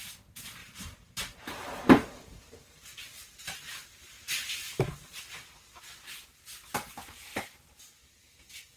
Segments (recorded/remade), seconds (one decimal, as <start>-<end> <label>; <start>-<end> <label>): 0.0-0.6 recorded; 0.6-5.2 remade; 5.2-7.3 recorded; 7.3-8.4 remade; 8.4-8.8 recorded